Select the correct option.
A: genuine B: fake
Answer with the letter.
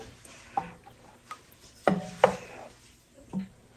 A